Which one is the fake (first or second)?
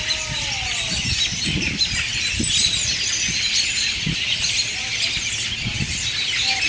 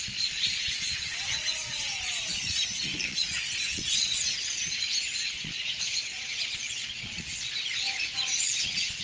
second